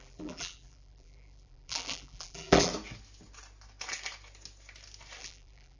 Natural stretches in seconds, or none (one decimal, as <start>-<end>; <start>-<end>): 2.7-5.2